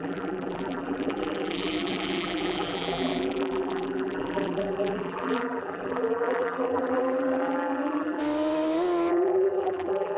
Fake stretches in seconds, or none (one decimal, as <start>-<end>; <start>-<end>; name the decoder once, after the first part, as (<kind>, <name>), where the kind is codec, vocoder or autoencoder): 0.0-8.2 (vocoder, BigVGAN v2); 9.1-10.2